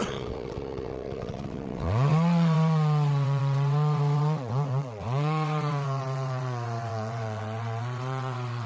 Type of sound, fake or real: fake